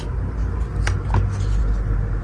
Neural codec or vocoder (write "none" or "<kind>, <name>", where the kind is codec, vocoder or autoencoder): none